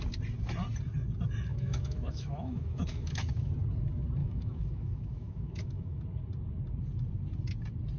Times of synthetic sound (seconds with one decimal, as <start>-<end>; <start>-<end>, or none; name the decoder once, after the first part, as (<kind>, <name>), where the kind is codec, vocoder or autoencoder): 1.5-3.5 (autoencoder, DAC-VAE); 4.2-6.0